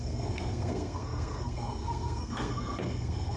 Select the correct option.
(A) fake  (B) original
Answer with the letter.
A